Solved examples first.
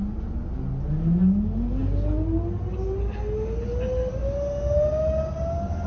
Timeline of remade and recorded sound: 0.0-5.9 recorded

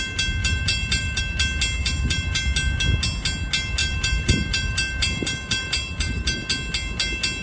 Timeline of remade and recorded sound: 0.0-0.4 recorded; 0.4-1.2 remade; 1.2-1.8 recorded; 1.8-2.4 remade; 2.4-3.8 recorded; 3.8-6.5 remade; 6.5-7.4 recorded

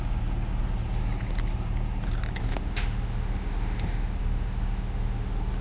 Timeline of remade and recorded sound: 0.0-2.4 recorded; 2.4-5.6 remade

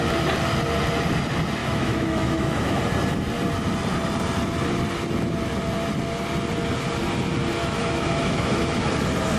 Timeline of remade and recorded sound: 0.0-1.6 recorded; 1.6-2.8 remade; 2.8-7.6 recorded; 7.6-8.8 remade; 8.8-9.4 recorded